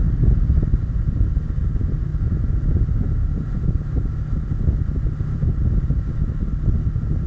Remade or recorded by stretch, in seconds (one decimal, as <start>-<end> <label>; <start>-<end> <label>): 0.0-7.3 recorded